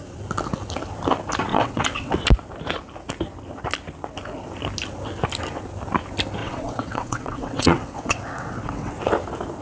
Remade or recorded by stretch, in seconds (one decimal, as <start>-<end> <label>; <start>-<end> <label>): 0.0-1.5 recorded; 1.5-2.2 remade; 2.2-6.4 recorded; 6.4-8.9 remade; 8.9-9.6 recorded